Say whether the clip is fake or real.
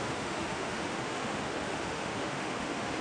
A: fake